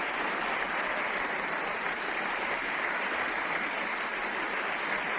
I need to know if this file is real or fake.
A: real